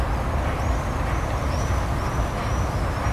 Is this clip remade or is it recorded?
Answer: recorded